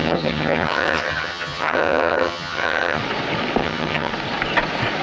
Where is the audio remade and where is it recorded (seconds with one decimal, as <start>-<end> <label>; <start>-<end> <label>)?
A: 0.0-3.0 remade; 3.0-3.6 recorded; 3.6-4.1 remade; 4.1-5.0 recorded